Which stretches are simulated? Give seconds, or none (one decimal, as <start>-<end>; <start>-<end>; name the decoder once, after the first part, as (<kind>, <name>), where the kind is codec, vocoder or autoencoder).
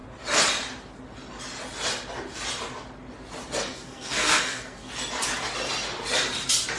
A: 3.7-4.9 (codec, SNAC)